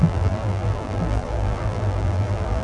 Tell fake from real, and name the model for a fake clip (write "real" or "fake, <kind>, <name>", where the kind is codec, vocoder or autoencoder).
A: fake, vocoder, BigVGAN v2